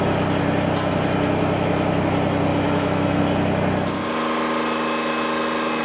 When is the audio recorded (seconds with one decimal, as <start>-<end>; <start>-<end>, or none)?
0.0-2.5; 3.2-5.8